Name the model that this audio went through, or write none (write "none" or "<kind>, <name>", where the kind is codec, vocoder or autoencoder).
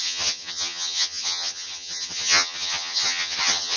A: vocoder, HiFi-GAN